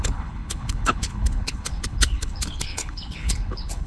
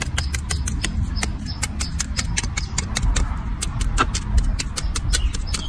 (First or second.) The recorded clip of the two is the second